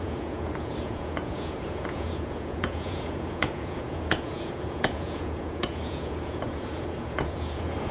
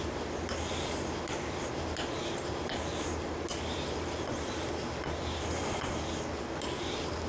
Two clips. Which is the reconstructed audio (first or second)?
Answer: first